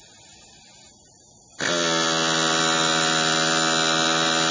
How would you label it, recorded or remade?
recorded